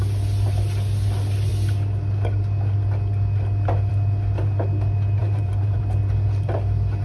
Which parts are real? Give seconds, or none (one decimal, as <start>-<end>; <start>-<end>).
0.0-5.2; 5.8-7.0